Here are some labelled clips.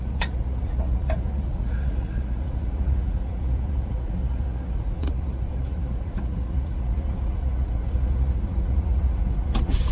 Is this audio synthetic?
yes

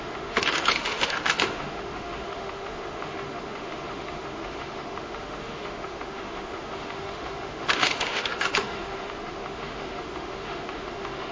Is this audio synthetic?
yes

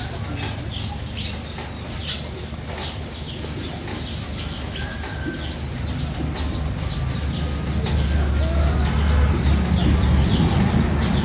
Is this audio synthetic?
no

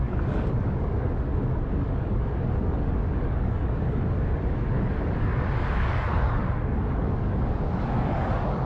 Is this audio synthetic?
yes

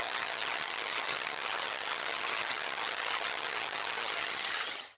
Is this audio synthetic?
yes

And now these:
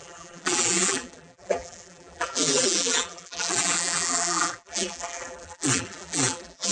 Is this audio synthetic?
yes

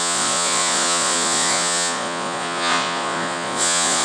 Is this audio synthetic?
yes